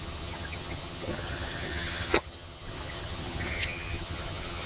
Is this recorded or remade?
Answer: remade